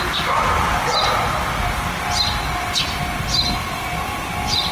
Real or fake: real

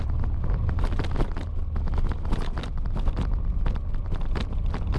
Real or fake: real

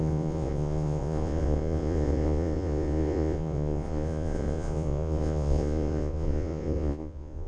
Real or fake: fake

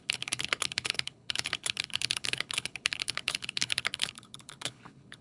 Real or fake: fake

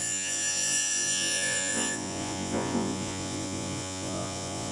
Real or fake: fake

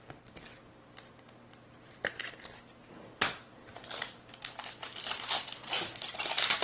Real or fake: real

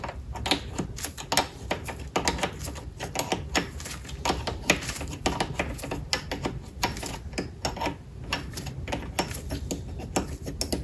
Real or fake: real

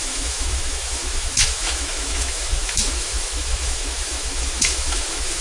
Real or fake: fake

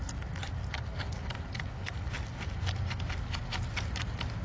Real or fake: real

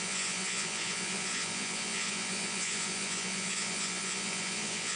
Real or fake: fake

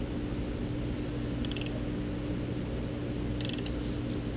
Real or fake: real